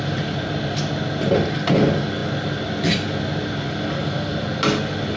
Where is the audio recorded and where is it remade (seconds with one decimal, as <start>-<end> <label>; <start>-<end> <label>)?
0.0-5.2 recorded